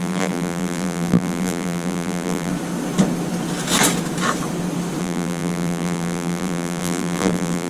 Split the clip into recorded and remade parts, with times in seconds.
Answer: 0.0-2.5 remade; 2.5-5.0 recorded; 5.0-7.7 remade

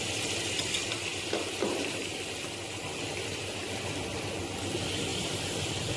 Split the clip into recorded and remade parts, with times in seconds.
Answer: 0.0-5.1 recorded; 5.1-6.0 remade

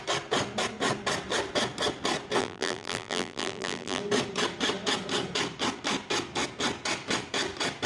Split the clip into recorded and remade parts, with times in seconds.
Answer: 0.0-2.4 recorded; 2.4-4.0 remade; 4.0-7.9 recorded